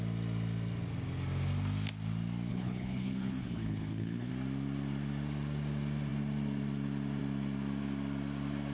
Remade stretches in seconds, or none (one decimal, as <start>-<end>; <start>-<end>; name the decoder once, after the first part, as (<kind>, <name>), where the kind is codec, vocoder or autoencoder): 2.5-4.3 (codec, HILCodec)